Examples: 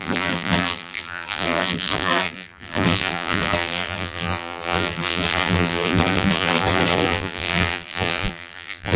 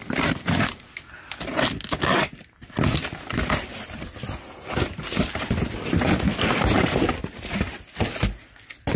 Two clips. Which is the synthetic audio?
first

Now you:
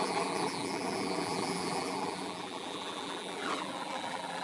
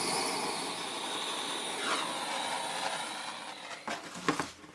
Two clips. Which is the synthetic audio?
first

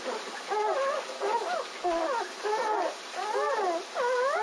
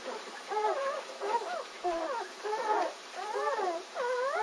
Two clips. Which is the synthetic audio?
second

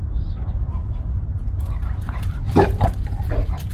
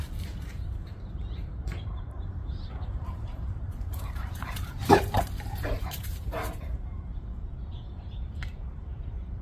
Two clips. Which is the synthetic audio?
second